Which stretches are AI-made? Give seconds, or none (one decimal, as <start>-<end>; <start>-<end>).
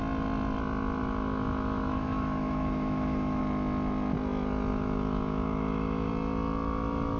1.0-3.4; 4.7-6.1